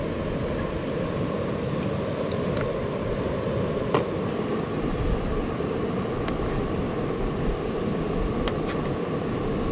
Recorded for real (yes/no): yes